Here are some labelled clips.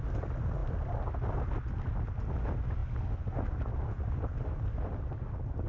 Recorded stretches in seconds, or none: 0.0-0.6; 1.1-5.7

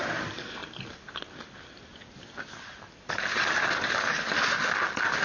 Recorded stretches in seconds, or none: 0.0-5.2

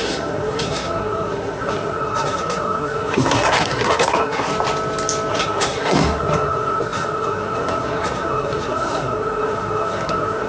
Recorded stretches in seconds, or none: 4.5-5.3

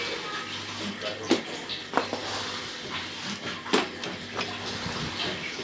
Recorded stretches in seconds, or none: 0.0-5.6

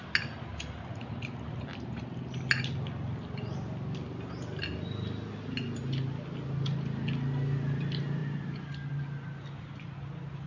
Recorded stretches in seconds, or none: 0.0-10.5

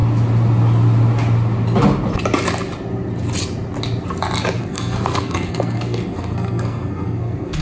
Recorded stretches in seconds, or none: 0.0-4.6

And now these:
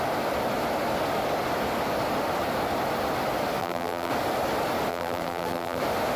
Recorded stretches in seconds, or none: 0.0-3.6; 4.1-4.9; 5.8-6.2